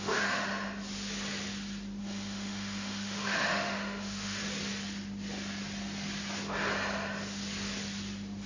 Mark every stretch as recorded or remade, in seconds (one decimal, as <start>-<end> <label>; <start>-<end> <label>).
0.0-0.5 remade; 0.5-2.0 recorded; 2.0-4.4 remade; 4.4-8.5 recorded